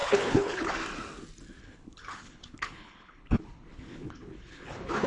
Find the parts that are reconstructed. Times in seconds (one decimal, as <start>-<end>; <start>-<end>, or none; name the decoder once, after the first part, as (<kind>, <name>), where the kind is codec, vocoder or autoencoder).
0.0-0.7 (codec, HILCodec); 1.6-5.1